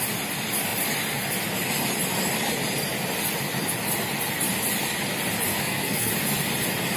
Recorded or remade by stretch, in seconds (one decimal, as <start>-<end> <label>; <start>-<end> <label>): 0.0-5.5 recorded; 5.5-6.1 remade; 6.1-7.0 recorded